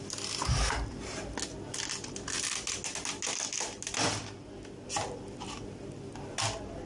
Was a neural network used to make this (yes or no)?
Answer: no